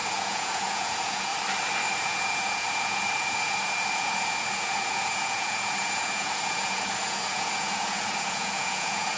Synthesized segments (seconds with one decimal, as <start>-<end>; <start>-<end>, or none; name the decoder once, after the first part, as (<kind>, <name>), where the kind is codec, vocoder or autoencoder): 0.0-1.3 (vocoder, Vocos); 1.9-9.2

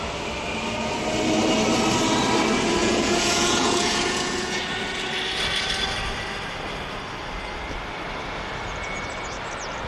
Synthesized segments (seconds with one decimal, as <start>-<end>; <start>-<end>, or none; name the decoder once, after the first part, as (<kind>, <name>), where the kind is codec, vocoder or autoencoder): 2.8-4.6 (vocoder, Vocos)

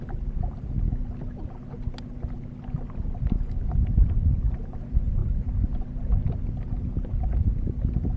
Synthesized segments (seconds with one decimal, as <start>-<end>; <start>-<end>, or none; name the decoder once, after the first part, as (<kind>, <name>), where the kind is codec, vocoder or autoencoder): none